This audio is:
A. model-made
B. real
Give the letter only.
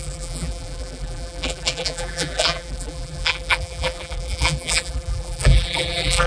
A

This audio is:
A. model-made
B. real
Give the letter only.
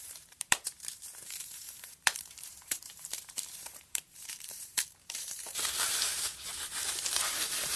A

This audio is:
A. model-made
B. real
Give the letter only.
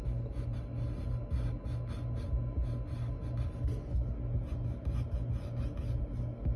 B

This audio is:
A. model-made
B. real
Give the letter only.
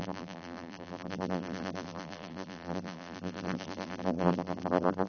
A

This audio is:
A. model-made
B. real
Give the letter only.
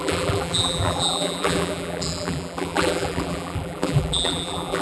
A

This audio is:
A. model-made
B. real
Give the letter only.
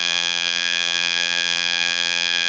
A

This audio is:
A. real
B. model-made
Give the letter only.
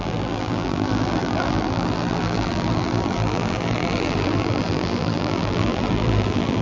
B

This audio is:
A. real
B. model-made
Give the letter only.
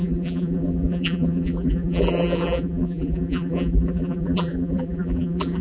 B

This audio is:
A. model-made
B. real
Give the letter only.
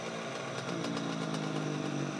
B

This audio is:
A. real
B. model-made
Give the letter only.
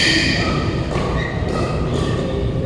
B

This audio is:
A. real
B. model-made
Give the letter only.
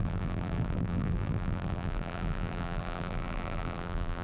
B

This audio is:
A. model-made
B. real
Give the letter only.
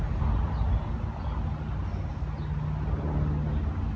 B